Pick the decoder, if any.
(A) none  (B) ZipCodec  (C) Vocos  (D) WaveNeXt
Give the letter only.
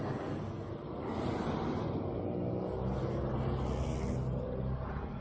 A